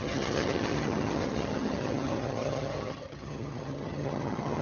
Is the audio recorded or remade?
remade